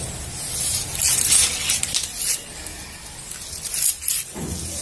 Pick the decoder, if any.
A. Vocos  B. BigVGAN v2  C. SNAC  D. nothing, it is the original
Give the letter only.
D